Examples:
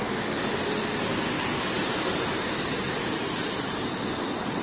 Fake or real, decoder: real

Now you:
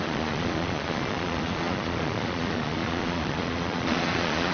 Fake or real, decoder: fake, vocoder, Vocos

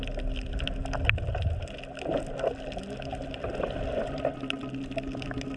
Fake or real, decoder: real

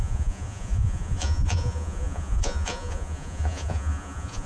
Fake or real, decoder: fake, vocoder, Vocos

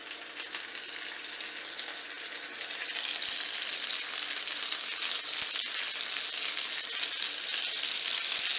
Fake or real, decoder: real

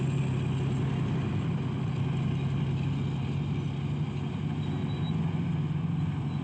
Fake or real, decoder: real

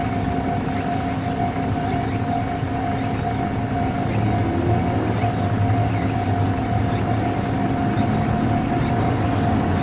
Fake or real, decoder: real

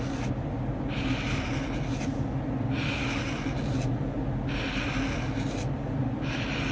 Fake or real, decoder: real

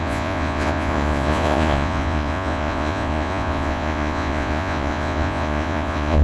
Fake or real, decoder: fake, vocoder, Vocos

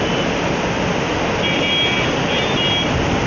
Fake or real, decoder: real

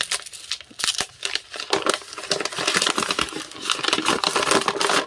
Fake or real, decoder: real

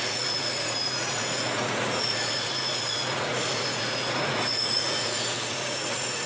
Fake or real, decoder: fake, vocoder, Vocos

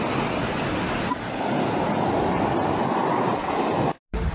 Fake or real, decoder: real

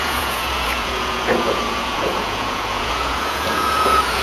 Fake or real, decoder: fake, vocoder, Vocos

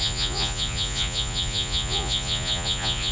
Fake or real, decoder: fake, vocoder, Vocos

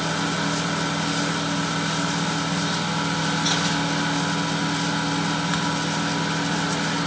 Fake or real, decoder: real